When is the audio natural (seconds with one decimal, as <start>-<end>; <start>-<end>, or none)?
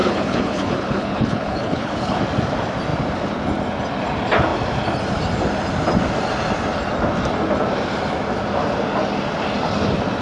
2.2-10.2